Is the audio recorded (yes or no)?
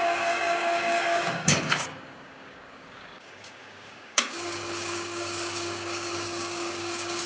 no